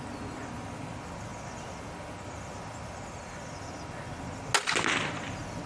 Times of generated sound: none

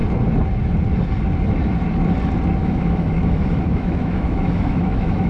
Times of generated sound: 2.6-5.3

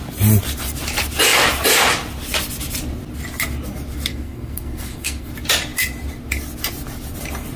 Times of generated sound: 4.1-5.3